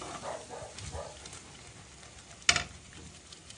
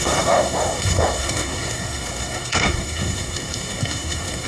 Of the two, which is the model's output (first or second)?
second